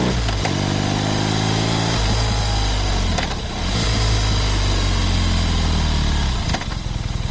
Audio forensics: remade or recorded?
recorded